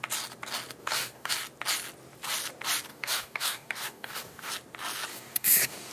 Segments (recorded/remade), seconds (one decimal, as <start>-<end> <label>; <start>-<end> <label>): 0.0-0.8 recorded; 0.8-1.3 remade; 1.3-2.9 recorded; 2.9-4.5 remade; 4.5-5.1 recorded; 5.1-5.9 remade